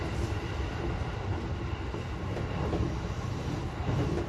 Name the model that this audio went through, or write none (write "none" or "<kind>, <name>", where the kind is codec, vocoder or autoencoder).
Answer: none